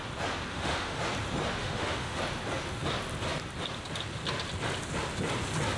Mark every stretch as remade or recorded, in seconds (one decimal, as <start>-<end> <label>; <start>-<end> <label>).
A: 0.0-0.5 recorded; 0.5-1.0 remade; 1.0-1.6 recorded; 1.6-2.2 remade; 2.2-5.8 recorded